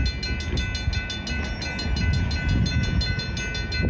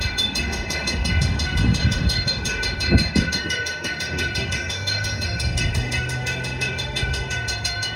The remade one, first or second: second